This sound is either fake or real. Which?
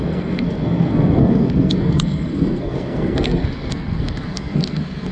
fake